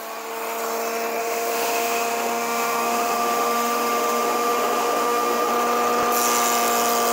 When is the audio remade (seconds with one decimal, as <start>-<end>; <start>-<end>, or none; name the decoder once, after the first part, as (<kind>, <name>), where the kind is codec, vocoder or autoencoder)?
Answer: 1.2-5.5 (autoencoder, DAC-VAE)